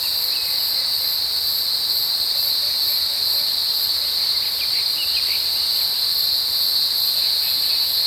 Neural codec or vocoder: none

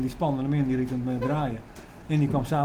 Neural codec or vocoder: none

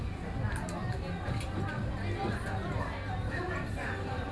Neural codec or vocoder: none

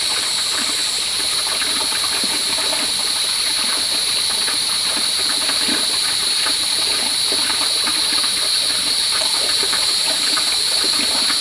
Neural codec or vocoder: vocoder, BigVGAN v2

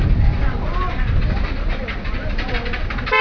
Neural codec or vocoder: none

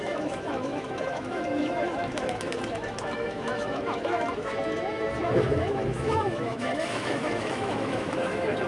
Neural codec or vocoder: autoencoder, DAC-VAE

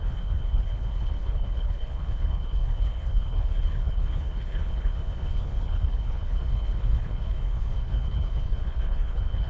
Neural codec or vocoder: codec, HILCodec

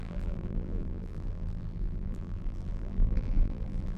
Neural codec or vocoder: vocoder, BigVGAN v2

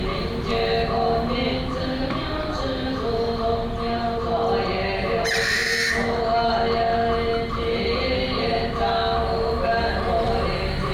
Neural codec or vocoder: none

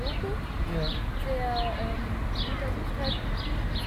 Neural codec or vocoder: none